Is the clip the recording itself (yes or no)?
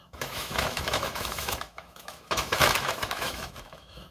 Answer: no